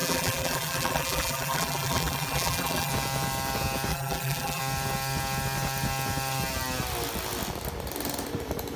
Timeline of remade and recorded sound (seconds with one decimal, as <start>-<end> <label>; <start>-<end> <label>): 0.0-2.9 remade; 2.9-3.9 recorded; 3.9-4.6 remade; 4.6-8.8 recorded